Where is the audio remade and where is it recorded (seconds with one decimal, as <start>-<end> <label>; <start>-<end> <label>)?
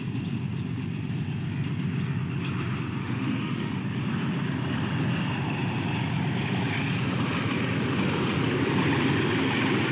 0.0-3.0 recorded; 3.0-3.8 remade; 3.8-9.9 recorded